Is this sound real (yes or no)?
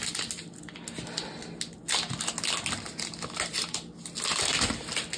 yes